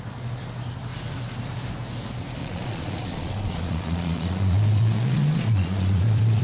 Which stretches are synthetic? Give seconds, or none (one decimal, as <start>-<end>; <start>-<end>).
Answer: 2.4-6.4

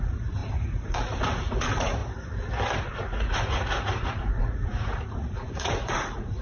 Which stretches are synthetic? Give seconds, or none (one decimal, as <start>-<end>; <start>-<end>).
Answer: 0.0-2.0; 2.8-6.4

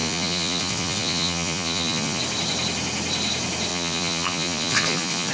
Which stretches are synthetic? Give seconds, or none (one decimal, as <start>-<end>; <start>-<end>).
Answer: 0.0-2.2; 3.7-5.3